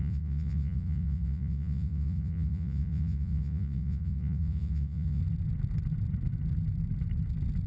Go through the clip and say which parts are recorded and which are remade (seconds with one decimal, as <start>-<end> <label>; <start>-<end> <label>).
0.0-5.2 remade; 5.2-7.7 recorded